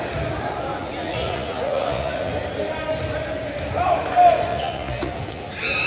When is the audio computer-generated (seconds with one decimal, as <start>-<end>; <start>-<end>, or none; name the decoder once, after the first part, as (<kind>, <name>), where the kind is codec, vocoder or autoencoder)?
0.7-2.3 (vocoder, Vocos); 4.5-5.5